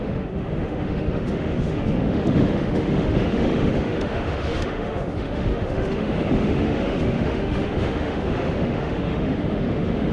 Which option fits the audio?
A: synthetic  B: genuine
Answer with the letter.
A